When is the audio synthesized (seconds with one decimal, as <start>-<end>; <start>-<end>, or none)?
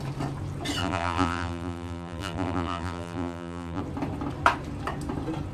0.8-3.8